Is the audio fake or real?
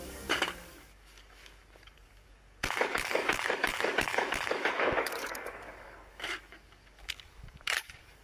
fake